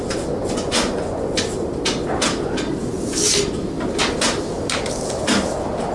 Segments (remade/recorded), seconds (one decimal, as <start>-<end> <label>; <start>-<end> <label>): 0.0-0.4 recorded; 0.4-1.4 remade; 1.4-5.9 recorded